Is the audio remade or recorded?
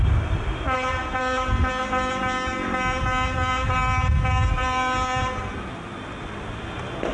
recorded